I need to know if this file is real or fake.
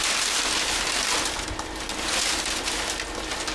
real